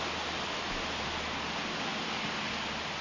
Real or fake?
real